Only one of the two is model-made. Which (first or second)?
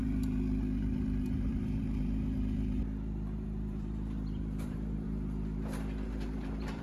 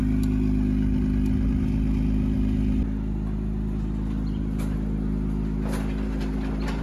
first